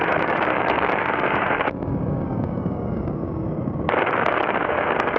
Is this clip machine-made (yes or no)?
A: yes